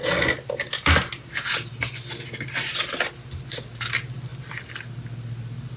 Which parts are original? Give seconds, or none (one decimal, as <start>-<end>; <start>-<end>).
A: 0.0-5.8